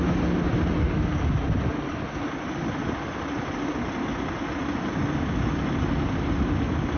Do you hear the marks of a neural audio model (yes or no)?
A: no